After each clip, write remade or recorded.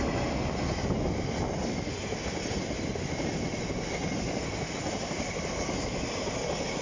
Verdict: recorded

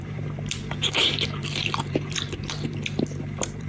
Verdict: remade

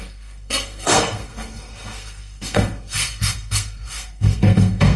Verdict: remade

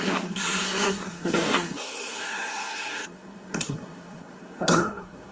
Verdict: remade